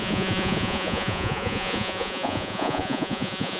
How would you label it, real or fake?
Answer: fake